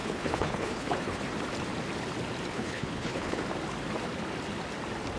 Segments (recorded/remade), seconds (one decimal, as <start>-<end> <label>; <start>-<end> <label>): 0.0-1.2 remade; 1.2-2.5 recorded; 2.5-3.4 remade; 3.4-5.2 recorded